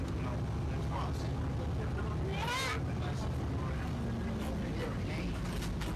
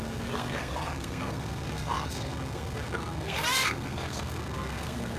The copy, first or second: second